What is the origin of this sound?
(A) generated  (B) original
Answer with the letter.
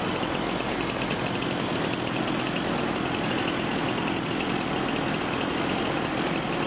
B